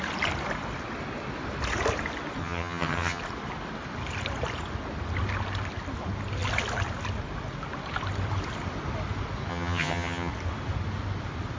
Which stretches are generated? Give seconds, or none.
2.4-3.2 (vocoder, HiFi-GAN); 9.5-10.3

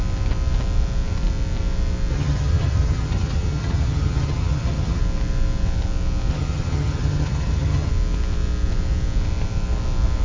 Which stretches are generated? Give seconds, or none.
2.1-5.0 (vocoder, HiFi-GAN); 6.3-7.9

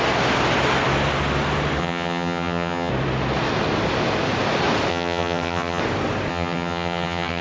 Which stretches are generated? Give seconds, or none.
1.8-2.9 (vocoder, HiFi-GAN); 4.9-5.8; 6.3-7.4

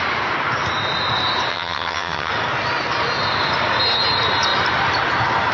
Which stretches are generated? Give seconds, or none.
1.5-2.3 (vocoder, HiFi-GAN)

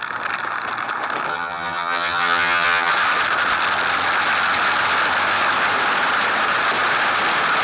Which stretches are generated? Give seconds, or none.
1.3-2.9 (vocoder, HiFi-GAN)

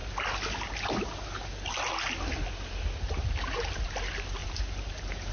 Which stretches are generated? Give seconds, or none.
none